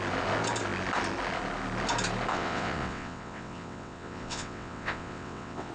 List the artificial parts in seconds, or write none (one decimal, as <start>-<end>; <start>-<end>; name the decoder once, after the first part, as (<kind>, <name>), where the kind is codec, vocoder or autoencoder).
2.3-5.7 (vocoder, WaveNeXt)